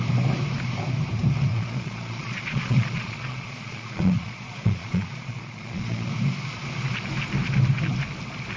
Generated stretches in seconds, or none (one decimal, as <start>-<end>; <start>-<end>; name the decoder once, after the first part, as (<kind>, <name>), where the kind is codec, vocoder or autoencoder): 1.5-6.1 (vocoder, Vocos)